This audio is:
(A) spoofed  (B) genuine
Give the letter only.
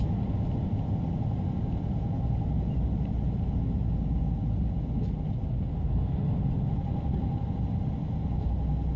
B